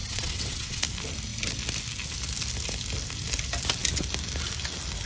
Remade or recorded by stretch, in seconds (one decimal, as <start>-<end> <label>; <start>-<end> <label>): 0.0-0.8 remade; 0.8-5.1 recorded